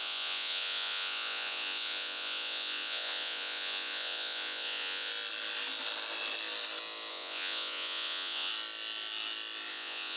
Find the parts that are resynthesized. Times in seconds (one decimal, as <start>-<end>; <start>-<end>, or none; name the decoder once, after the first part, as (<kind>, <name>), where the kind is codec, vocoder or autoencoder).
0.0-5.1 (vocoder, Vocos); 7.1-8.5; 9.7-10.2